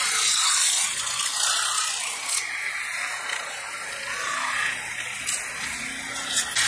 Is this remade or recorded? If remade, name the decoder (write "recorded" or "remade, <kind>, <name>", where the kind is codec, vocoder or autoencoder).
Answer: recorded